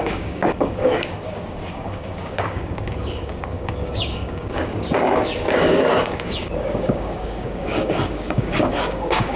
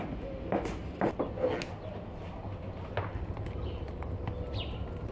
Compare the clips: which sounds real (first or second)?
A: second